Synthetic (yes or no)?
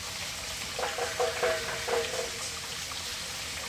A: no